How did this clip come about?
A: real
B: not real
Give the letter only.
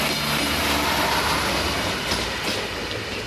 A